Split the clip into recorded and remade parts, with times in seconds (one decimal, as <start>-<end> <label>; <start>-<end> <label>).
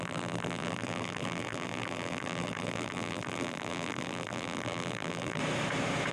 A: 0.0-5.4 remade; 5.4-6.1 recorded